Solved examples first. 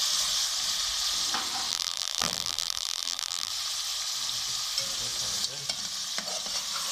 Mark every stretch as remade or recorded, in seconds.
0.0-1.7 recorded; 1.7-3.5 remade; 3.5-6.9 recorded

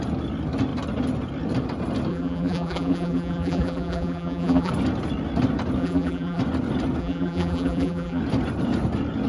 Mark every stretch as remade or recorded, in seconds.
0.0-2.1 recorded; 2.1-4.7 remade; 4.7-5.8 recorded; 5.8-6.4 remade; 6.4-7.0 recorded; 7.0-8.2 remade; 8.2-9.3 recorded